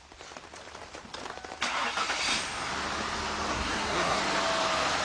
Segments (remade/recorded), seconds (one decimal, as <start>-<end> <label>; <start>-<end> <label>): 0.0-3.5 recorded; 3.5-4.2 remade; 4.2-5.0 recorded